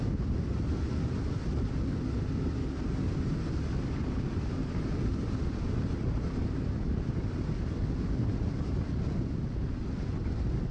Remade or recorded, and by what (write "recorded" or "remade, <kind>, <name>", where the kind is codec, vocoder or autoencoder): recorded